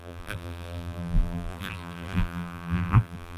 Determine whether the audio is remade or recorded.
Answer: remade